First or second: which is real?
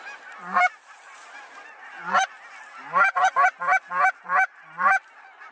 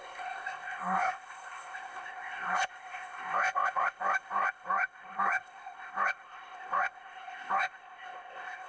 first